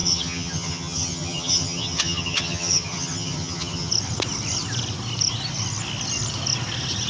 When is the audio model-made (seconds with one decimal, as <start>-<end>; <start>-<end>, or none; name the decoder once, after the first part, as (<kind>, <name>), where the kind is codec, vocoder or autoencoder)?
0.0-3.9 (vocoder, HiFi-GAN)

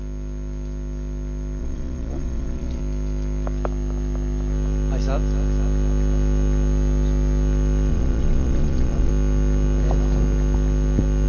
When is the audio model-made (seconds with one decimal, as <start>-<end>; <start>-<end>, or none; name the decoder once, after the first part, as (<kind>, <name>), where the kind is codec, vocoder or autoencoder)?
1.6-2.8 (vocoder, Vocos); 7.9-9.1

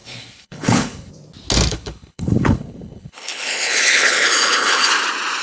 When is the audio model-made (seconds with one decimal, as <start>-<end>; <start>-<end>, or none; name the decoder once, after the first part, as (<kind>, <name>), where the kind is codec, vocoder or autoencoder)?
0.0-1.1 (codec, HILCodec); 1.7-4.9

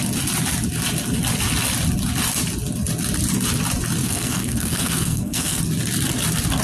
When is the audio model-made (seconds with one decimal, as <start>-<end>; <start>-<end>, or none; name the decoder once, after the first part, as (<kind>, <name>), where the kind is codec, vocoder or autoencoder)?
4.0-5.6 (codec, SNAC)